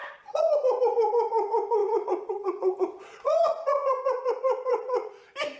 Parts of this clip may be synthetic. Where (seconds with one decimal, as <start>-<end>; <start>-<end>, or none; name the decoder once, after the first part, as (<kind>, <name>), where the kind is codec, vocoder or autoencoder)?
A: 0.0-0.5 (vocoder, Vocos); 1.8-5.1

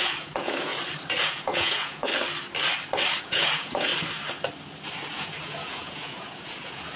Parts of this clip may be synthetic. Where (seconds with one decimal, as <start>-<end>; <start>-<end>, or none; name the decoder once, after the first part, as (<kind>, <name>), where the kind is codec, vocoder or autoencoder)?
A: 0.0-0.7 (vocoder, Vocos); 1.2-2.1; 3.2-3.9; 5.2-7.0

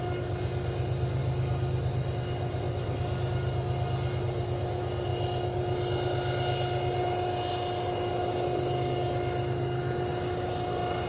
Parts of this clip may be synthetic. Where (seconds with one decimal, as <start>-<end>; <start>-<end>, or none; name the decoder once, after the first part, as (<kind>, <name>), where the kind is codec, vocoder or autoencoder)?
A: none